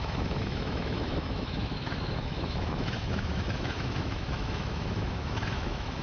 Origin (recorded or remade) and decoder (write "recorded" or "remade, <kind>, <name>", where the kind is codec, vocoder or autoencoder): remade, autoencoder, DAC-VAE